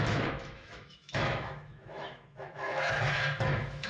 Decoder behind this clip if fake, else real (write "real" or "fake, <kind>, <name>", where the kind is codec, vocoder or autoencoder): fake, autoencoder, DAC-VAE